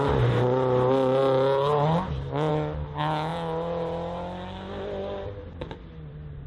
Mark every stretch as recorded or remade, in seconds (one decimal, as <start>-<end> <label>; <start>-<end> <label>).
0.0-6.5 recorded